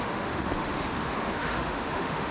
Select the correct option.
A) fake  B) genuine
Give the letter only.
A